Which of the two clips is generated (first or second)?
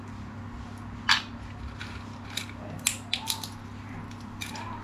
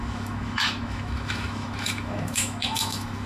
second